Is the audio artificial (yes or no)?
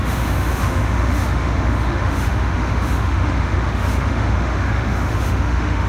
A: yes